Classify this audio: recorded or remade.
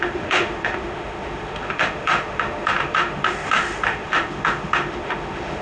remade